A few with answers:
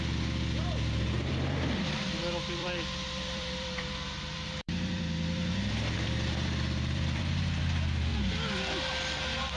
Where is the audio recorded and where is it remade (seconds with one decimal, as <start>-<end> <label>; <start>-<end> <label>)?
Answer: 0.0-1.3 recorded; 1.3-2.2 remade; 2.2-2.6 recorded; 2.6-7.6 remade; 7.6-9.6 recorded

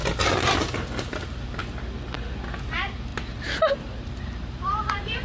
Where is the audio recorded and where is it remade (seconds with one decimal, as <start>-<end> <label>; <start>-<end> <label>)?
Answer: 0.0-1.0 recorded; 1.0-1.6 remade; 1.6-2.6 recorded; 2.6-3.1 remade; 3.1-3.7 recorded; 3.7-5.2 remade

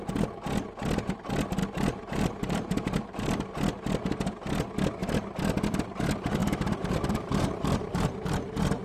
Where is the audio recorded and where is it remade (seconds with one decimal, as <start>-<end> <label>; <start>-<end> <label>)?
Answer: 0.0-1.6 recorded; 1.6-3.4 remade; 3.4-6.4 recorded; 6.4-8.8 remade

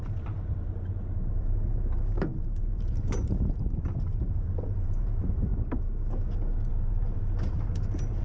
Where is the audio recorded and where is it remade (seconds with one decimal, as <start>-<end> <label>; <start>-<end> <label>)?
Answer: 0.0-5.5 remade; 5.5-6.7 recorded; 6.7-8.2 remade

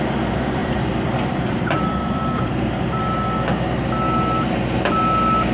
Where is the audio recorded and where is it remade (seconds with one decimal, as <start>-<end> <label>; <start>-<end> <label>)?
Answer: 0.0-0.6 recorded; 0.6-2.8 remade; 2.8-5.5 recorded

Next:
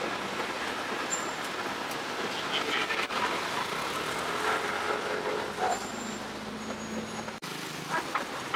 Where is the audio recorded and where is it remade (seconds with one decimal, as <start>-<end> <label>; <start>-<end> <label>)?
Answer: 0.0-8.6 recorded